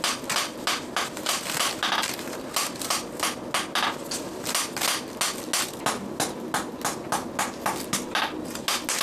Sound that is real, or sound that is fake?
real